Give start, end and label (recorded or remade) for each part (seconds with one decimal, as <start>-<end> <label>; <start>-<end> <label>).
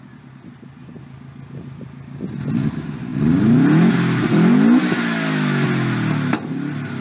0.0-7.0 recorded